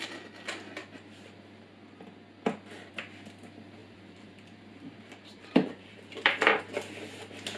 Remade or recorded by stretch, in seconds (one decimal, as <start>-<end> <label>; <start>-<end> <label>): 0.0-3.8 recorded; 3.8-6.6 remade; 6.6-7.6 recorded